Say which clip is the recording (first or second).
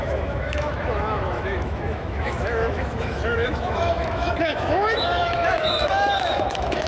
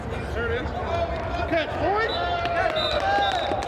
second